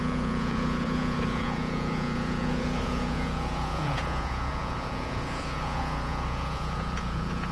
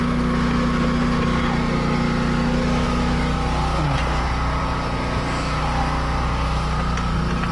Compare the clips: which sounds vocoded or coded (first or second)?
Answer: first